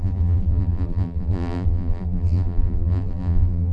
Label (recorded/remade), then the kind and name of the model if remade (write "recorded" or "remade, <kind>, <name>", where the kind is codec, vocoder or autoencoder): remade, vocoder, BigVGAN v2